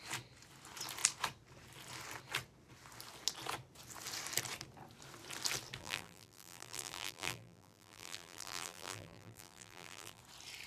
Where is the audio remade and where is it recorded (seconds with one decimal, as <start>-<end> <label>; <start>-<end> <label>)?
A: 0.0-5.8 recorded; 5.8-10.2 remade; 10.2-10.7 recorded